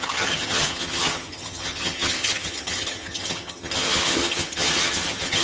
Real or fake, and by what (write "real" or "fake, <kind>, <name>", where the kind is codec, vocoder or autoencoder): fake, vocoder, HiFi-GAN